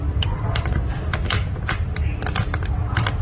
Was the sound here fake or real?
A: real